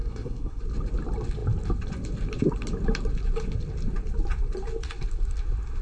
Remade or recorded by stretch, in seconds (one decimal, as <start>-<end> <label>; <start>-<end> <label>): 0.0-0.6 remade; 0.6-5.8 recorded